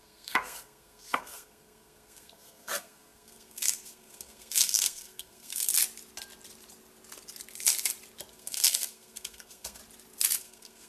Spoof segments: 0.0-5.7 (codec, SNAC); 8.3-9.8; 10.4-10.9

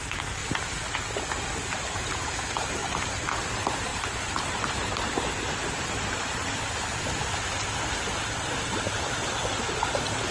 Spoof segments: 0.0-0.4 (vocoder, BigVGAN v2); 1.9-2.8; 3.5-6.4; 9.0-10.3

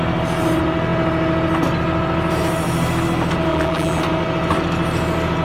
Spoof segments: 3.5-4.0 (vocoder, BigVGAN v2)

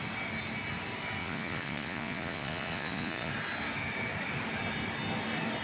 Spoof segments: 1.2-3.3 (vocoder, Vocos)

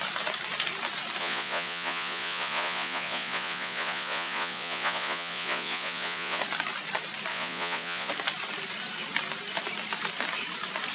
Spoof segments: 1.2-6.4 (vocoder, Vocos); 7.3-8.1

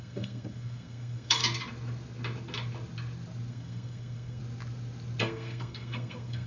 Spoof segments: 0.0-1.4 (codec, SNAC); 3.5-4.4; 5.2-6.5